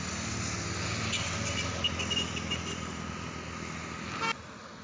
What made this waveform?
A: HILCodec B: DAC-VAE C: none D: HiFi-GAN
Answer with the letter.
C